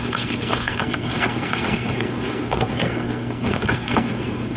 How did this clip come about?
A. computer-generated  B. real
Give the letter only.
A